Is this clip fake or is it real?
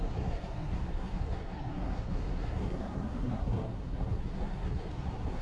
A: fake